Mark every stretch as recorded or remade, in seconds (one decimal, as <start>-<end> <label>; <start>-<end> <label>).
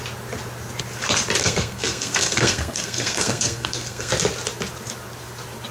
0.0-1.4 recorded; 1.4-4.1 remade; 4.1-5.7 recorded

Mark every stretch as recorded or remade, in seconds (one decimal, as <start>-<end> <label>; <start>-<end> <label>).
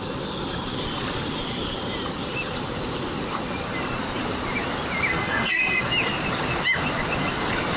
0.0-5.1 recorded; 5.1-5.8 remade; 5.8-7.8 recorded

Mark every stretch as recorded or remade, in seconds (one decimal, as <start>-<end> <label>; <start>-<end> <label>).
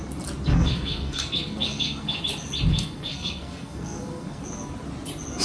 0.0-0.5 recorded; 0.5-2.2 remade; 2.2-2.7 recorded; 2.7-4.4 remade; 4.4-5.4 recorded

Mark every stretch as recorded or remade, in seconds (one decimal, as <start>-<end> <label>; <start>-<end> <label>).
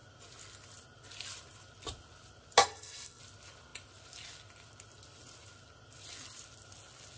0.0-2.6 recorded; 2.6-3.2 remade; 3.2-7.2 recorded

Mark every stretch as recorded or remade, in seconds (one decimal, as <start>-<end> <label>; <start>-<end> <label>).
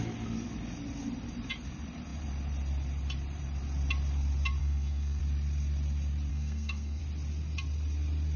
0.0-4.6 recorded; 4.6-5.2 remade; 5.2-6.3 recorded; 6.3-7.0 remade; 7.0-8.4 recorded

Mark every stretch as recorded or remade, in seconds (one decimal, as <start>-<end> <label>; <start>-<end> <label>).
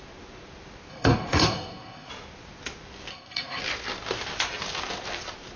0.0-0.9 recorded; 0.9-2.1 remade; 2.1-3.1 recorded; 3.1-3.6 remade; 3.6-5.6 recorded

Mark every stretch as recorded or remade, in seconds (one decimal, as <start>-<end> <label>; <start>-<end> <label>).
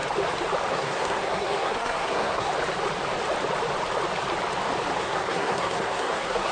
0.0-0.7 recorded; 0.7-2.5 remade; 2.5-5.0 recorded; 5.0-6.5 remade